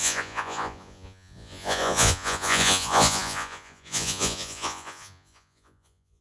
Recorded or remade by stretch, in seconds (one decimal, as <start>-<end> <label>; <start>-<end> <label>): 0.0-6.2 remade